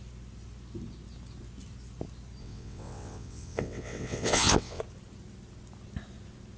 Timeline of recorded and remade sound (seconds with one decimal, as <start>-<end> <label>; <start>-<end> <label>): 0.0-2.4 recorded; 2.4-4.8 remade; 4.8-6.6 recorded